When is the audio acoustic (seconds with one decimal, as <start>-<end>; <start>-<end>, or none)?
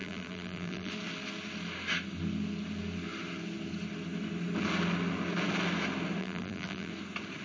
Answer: 0.9-6.2; 6.9-7.4